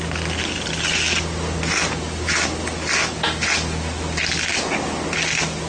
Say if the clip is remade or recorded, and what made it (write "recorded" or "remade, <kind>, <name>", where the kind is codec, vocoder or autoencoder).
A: recorded